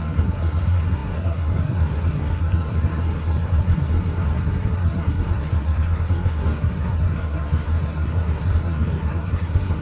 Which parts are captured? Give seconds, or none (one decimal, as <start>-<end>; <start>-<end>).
none